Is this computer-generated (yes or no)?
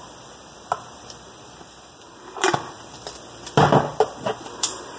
yes